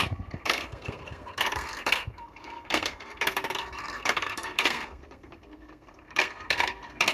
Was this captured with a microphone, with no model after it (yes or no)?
no